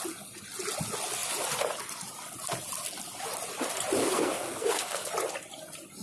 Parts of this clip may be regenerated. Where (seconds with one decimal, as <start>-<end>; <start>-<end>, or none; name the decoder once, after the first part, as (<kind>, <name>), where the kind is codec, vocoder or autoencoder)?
4.0-5.1 (codec, SNAC)

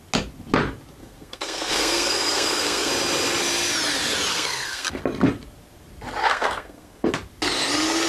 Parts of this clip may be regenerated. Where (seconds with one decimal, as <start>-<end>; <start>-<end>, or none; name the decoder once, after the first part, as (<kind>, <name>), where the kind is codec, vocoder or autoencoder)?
1.0-2.9 (codec, SNAC); 4.3-5.0; 6.2-7.1